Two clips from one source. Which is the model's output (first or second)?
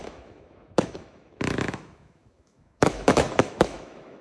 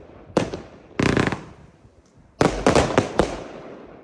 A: first